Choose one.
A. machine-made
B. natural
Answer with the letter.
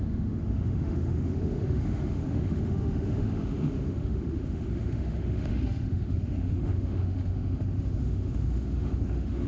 A